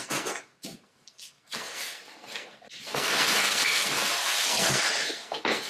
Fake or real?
fake